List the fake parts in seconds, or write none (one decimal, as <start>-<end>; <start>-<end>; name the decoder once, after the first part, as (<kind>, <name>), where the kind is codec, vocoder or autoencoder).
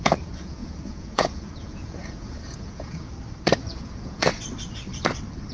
0.0-3.1 (vocoder, Vocos); 3.6-4.3